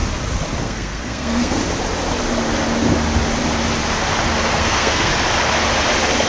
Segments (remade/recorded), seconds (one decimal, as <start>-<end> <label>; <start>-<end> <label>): 0.0-0.6 recorded; 0.6-1.6 remade; 1.6-4.5 recorded; 4.5-5.1 remade; 5.1-6.3 recorded